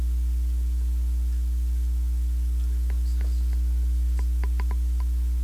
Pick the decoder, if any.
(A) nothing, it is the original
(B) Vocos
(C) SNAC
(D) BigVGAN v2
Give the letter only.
A